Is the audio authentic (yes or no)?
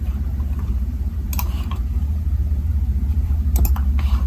no